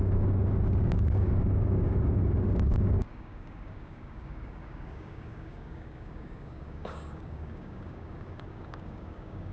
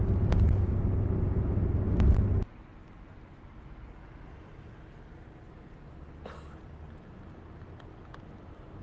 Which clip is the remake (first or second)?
first